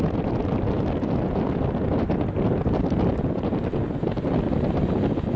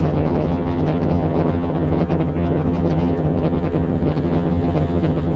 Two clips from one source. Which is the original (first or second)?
first